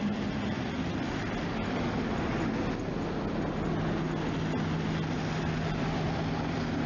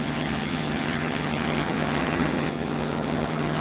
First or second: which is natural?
first